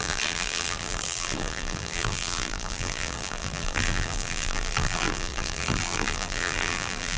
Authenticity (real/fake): fake